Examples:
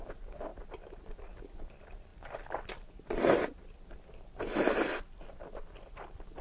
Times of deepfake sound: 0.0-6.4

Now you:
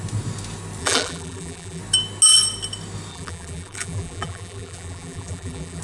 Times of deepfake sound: 0.8-1.8; 3.1-5.8

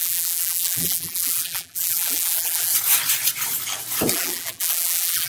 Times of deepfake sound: 0.0-2.7; 4.1-5.3